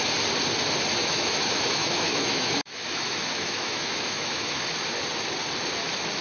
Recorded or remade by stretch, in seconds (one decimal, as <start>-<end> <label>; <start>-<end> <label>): 0.0-1.0 recorded; 1.0-4.7 remade; 4.7-6.2 recorded